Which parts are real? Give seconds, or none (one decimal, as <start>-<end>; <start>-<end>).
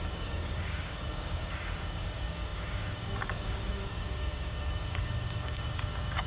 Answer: none